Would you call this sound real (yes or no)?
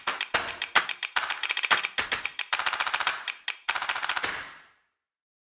yes